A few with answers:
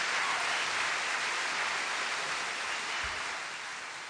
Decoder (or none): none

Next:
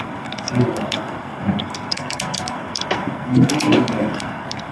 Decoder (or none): codec, SNAC